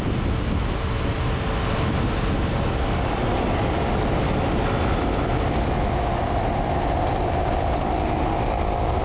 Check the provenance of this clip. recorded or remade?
recorded